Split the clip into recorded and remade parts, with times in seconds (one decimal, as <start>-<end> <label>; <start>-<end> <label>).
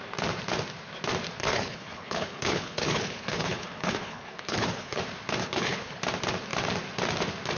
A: 0.0-1.4 recorded; 1.4-5.0 remade; 5.0-5.4 recorded; 5.4-6.0 remade; 6.0-7.6 recorded